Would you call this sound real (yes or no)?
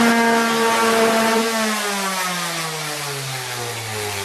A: yes